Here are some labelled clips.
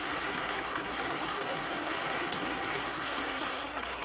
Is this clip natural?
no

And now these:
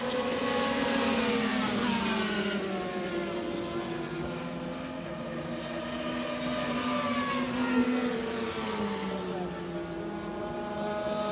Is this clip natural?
yes